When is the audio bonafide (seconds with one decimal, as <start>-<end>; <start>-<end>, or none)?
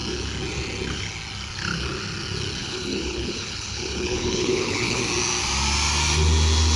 0.0-2.6; 5.0-6.8